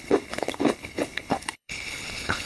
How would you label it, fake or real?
fake